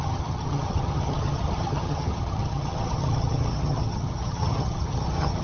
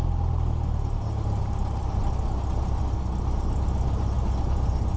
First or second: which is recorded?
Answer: second